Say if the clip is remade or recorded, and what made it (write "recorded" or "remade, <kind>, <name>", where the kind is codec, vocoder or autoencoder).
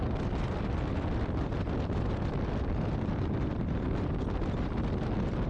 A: recorded